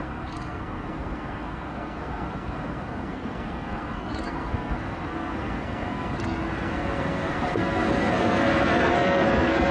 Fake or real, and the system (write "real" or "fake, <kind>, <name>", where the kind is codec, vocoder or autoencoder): fake, codec, SNAC